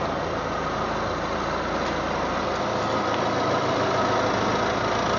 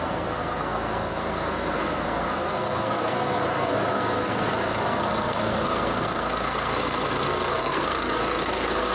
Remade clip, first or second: second